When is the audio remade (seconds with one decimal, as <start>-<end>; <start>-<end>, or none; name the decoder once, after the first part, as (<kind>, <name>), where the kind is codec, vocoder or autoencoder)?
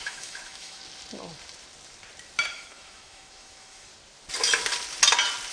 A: 0.0-0.8 (autoencoder, DAC-VAE); 2.5-3.9